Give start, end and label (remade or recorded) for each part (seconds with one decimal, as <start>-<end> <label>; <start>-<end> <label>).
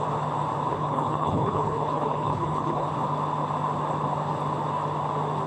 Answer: 0.0-0.7 recorded; 0.7-2.9 remade; 2.9-5.5 recorded